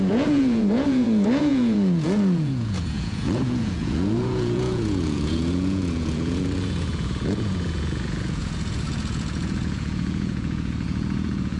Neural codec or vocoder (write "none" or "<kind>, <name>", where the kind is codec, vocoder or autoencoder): vocoder, Vocos